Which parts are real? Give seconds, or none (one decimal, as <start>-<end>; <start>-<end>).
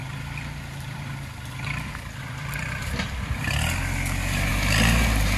3.2-5.4